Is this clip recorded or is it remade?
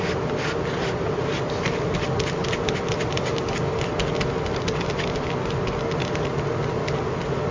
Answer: recorded